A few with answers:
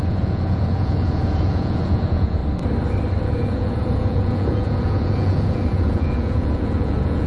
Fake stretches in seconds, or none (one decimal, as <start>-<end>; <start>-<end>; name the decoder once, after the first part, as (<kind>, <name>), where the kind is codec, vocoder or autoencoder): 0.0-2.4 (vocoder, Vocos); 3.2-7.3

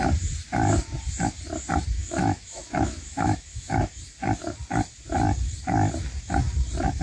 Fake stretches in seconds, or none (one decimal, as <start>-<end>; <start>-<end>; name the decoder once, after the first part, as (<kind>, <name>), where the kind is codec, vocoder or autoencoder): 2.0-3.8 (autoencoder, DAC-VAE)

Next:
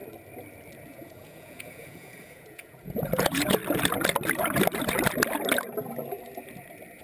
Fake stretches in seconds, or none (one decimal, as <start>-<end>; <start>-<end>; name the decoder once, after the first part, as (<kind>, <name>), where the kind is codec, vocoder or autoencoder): 0.9-3.6 (vocoder, Vocos)

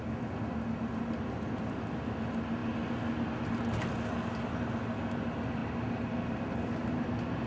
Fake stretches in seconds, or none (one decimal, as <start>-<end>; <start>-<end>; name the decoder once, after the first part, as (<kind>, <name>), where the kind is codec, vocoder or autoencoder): none